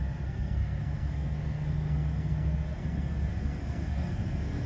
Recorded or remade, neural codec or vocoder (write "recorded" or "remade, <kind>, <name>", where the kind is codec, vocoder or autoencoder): remade, codec, SNAC